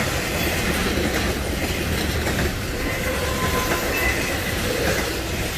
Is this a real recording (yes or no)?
yes